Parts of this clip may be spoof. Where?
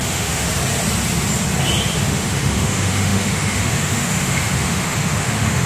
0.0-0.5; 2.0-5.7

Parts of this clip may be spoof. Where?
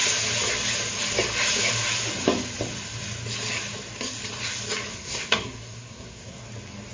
4.9-6.4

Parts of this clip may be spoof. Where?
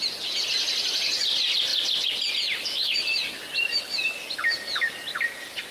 none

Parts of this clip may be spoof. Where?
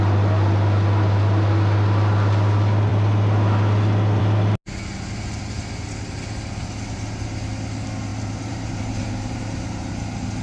8.1-9.9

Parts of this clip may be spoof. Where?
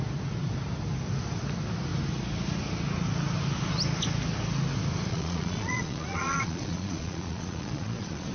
5.1-8.3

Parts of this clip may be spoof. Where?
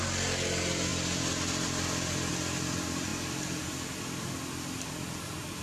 none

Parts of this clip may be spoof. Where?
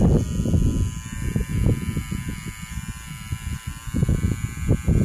none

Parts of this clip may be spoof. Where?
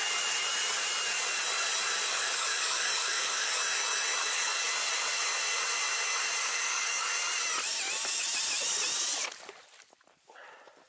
2.1-3.6; 4.2-4.7; 6.4-7.1